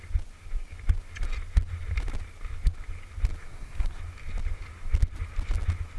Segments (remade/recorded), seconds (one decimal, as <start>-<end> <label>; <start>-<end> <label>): 0.0-3.4 recorded; 3.4-4.0 remade; 4.0-6.0 recorded